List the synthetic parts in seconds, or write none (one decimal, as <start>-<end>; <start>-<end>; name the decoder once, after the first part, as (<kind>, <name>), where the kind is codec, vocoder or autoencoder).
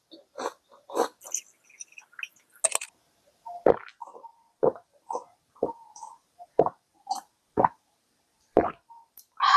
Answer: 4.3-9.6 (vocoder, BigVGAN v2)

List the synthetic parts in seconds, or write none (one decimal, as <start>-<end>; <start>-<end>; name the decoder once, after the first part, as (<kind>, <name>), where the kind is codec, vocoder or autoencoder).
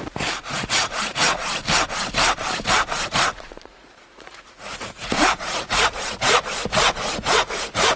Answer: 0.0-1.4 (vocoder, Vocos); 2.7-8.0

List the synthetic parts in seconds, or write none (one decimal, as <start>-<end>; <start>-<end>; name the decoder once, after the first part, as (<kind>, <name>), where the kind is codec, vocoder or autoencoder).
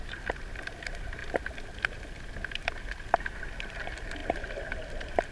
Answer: none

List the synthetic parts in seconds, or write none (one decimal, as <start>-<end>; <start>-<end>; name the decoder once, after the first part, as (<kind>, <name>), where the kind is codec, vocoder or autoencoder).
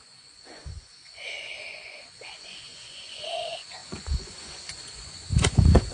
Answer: 0.0-5.9 (vocoder, Vocos)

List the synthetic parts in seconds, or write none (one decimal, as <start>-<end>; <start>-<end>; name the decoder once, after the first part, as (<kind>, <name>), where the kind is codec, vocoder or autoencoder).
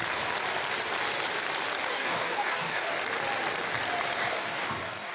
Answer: 1.9-2.9 (codec, DAC); 4.2-5.1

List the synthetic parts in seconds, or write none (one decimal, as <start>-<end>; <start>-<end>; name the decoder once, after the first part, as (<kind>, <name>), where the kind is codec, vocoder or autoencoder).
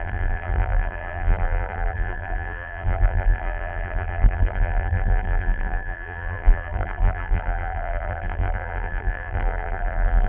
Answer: 0.0-10.3 (vocoder, BigVGAN v2)